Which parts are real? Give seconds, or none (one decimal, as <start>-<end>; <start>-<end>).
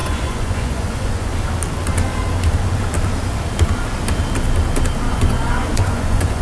1.3-5.1